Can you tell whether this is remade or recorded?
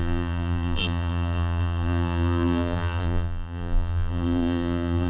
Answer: remade